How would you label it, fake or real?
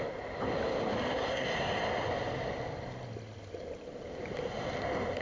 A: real